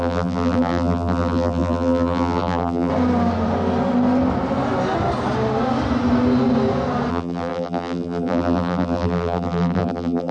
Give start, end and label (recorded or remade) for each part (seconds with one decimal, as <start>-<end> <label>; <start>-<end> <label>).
0.0-2.9 remade; 2.9-7.1 recorded; 7.1-10.3 remade